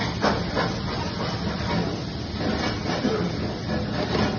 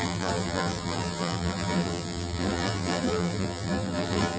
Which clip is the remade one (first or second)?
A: second